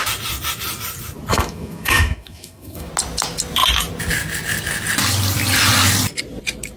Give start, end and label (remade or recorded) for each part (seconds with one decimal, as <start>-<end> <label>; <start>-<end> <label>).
0.0-1.3 recorded; 1.3-2.9 remade; 2.9-6.8 recorded